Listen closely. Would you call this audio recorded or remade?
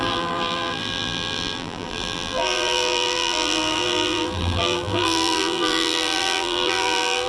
remade